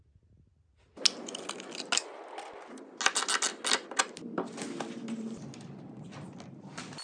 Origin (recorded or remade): recorded